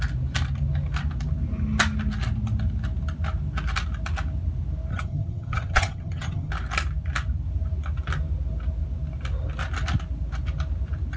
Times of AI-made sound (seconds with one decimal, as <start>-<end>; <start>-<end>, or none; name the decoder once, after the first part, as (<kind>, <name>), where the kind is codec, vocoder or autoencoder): 4.9-6.5 (vocoder, HiFi-GAN)